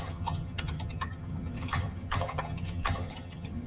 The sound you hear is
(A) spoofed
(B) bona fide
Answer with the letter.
A